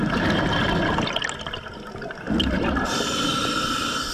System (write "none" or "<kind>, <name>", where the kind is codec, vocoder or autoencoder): none